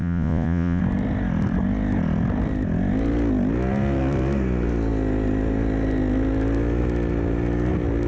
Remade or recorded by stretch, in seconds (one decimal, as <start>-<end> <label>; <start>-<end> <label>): 0.0-0.8 remade; 0.8-8.1 recorded